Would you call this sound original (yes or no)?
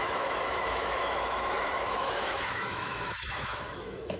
no